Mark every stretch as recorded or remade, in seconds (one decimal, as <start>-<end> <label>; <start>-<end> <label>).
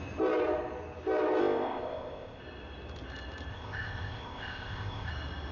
0.0-1.4 recorded; 1.4-2.4 remade; 2.4-3.5 recorded; 3.5-5.1 remade; 5.1-5.5 recorded